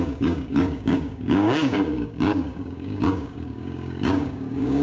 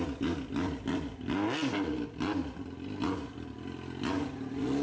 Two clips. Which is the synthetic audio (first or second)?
first